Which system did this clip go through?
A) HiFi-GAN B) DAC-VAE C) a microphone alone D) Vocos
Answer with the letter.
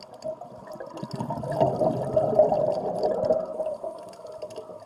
C